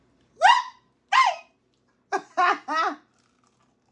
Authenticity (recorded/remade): recorded